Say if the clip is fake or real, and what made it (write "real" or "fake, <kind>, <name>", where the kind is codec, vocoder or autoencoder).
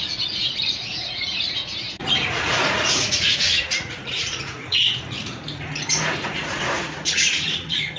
fake, vocoder, Vocos